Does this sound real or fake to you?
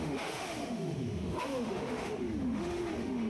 fake